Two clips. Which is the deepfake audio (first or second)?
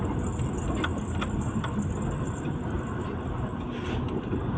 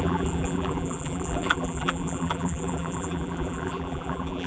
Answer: second